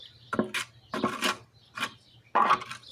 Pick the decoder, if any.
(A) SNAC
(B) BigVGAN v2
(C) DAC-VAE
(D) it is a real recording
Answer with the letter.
D